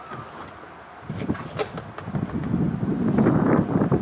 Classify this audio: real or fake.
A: real